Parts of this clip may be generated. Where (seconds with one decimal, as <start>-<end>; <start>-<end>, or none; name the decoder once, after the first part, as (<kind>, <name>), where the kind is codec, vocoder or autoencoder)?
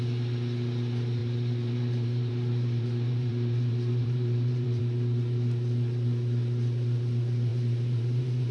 1.2-4.8 (vocoder, BigVGAN v2); 7.5-8.5